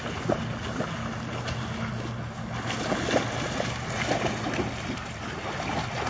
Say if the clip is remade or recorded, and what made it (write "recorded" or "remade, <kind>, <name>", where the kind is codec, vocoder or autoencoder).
recorded